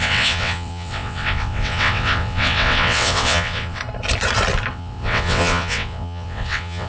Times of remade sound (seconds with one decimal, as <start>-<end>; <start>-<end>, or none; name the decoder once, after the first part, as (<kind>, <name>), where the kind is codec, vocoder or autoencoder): 0.0-3.8 (vocoder, WaveNeXt); 4.7-6.9